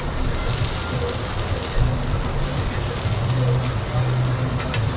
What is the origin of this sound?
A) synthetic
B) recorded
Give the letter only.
B